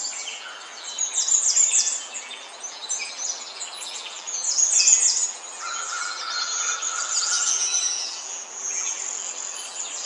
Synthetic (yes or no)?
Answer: yes